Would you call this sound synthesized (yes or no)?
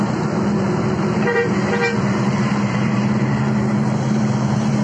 yes